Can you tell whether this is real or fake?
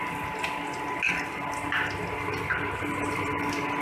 real